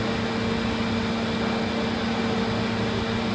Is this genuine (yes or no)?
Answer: yes